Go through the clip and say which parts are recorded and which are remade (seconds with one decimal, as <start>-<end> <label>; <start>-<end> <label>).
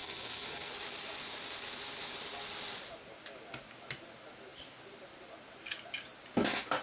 0.0-0.7 remade; 0.7-6.8 recorded